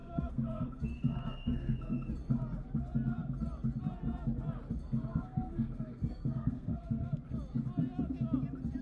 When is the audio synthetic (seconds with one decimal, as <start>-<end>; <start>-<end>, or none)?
0.0-2.1; 5.1-7.1